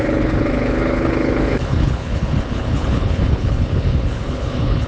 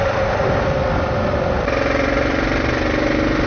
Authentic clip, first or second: second